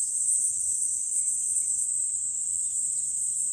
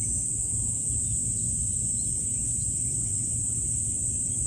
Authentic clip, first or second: second